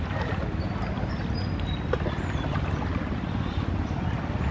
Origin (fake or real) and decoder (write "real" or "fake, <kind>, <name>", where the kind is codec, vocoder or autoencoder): real